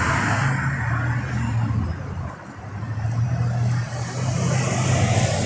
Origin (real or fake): real